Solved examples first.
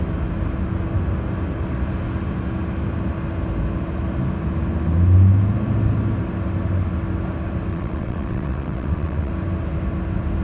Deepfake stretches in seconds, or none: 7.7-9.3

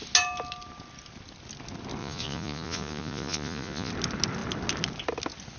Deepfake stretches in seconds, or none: 2.0-3.9

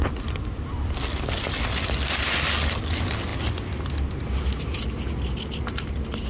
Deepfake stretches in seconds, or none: none

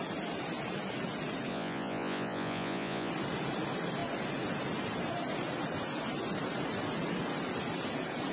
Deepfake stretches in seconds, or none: 1.5-3.1

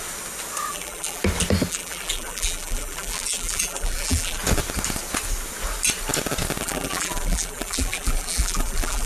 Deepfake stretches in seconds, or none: 0.7-1.2; 1.7-4.4; 6.6-9.1